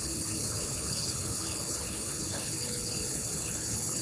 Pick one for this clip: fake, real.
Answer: fake